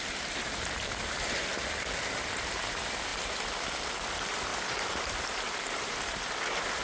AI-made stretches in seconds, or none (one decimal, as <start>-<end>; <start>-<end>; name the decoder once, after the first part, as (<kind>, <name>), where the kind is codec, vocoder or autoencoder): 4.5-6.2 (vocoder, BigVGAN v2)